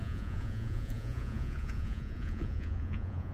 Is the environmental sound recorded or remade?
remade